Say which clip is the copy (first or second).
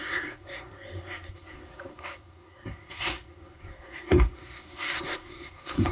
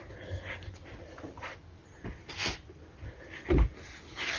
first